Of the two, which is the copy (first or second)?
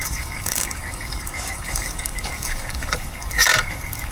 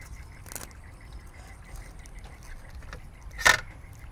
first